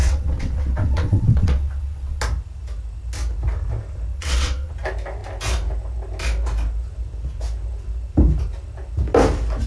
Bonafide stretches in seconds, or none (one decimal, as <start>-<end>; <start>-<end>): 2.2-4.1; 4.7-9.7

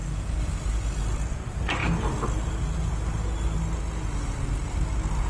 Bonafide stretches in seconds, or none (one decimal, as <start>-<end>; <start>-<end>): 0.5-5.3

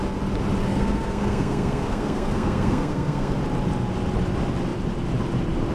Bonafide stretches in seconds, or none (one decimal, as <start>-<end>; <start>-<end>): 0.0-0.7; 3.4-5.7

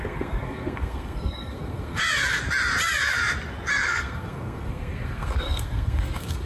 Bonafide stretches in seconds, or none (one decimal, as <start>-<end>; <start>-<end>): 2.0-3.7

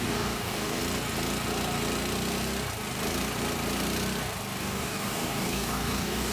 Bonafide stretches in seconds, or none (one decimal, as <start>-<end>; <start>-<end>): 0.8-4.6

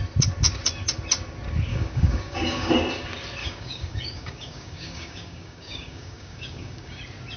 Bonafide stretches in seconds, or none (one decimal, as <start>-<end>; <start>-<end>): 0.0-1.7; 2.7-3.4; 7.0-7.4

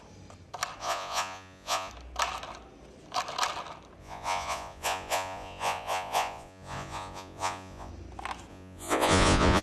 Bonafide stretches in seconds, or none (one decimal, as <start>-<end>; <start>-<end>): 0.0-0.8; 1.9-4.0; 7.9-8.5

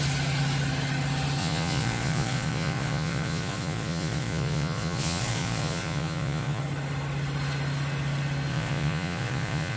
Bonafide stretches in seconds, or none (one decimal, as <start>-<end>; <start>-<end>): 0.0-1.4; 6.6-8.5